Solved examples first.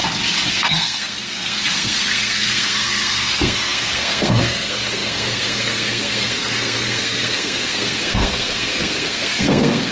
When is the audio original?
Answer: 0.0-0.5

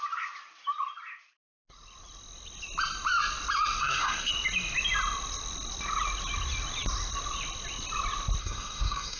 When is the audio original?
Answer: 0.0-3.8; 4.3-8.4

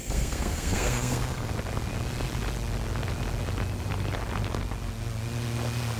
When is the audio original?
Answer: 1.5-6.0

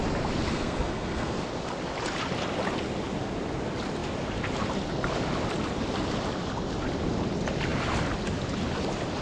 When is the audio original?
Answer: 0.0-0.5; 1.4-9.2

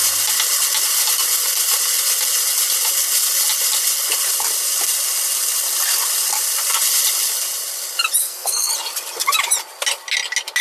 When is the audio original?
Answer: 0.0-8.2; 8.7-10.6

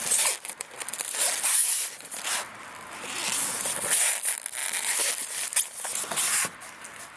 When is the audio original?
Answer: 0.0-7.2

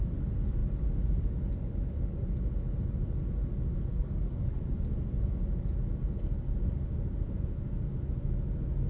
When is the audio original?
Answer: 0.0-3.9; 4.6-8.9

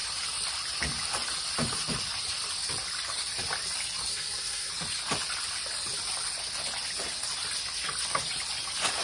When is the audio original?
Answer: 0.0-4.1; 4.7-9.0